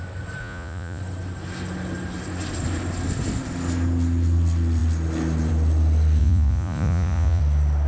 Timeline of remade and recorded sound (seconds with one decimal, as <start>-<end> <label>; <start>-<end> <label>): 0.0-0.4 recorded; 0.4-1.0 remade; 1.0-6.2 recorded; 6.2-7.4 remade; 7.4-7.9 recorded